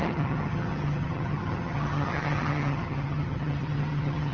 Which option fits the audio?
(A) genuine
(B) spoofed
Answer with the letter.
B